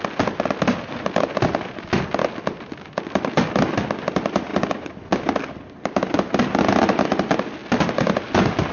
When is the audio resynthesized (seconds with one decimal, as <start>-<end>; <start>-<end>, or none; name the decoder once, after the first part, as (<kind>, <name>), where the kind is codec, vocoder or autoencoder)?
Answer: none